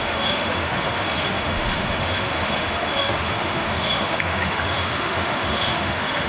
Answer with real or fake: fake